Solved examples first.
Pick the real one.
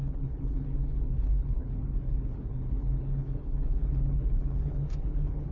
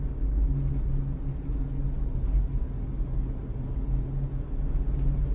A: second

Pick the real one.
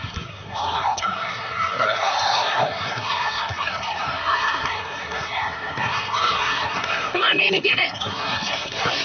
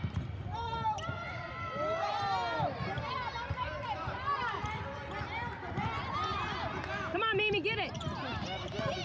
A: second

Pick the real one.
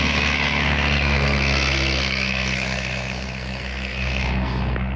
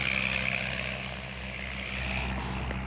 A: second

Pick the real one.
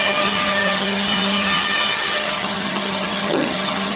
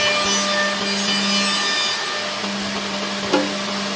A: second